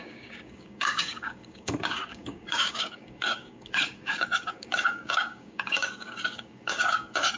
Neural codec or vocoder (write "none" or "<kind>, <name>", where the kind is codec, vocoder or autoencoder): codec, DAC